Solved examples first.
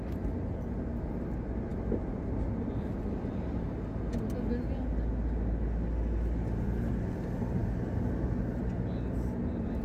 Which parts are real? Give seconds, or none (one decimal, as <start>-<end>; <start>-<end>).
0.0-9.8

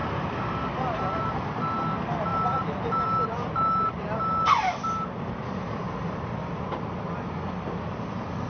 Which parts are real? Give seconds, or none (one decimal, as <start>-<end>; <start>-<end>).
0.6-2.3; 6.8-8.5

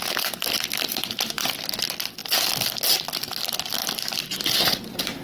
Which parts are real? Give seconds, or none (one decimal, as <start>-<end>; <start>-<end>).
2.2-2.9

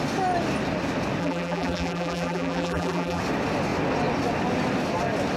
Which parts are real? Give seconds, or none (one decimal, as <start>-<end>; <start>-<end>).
0.0-1.2; 3.2-5.4

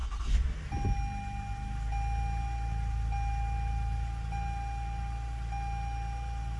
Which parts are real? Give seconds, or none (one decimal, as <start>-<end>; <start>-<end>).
0.0-6.6